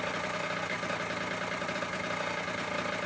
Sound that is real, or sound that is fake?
real